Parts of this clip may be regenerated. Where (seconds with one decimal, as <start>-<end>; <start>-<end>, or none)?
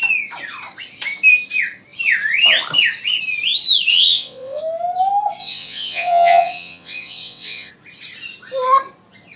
3.9-4.6; 5.4-7.7